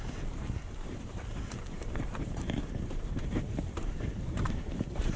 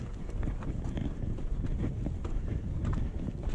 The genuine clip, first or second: second